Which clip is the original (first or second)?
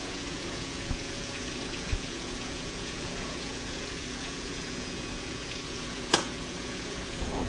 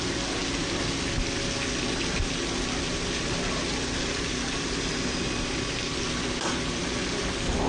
second